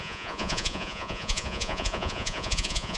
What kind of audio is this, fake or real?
fake